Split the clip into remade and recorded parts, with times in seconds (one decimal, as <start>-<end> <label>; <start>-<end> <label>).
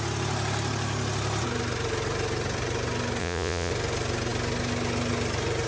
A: 0.0-3.2 recorded; 3.2-3.7 remade; 3.7-5.7 recorded